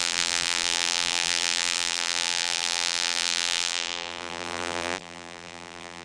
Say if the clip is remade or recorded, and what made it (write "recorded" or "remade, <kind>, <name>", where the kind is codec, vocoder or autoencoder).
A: remade, vocoder, BigVGAN v2